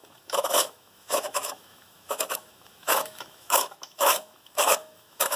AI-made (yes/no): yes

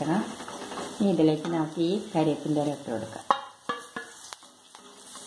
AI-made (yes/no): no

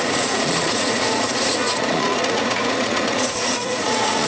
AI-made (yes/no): yes